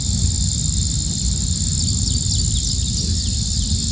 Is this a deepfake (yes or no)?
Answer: no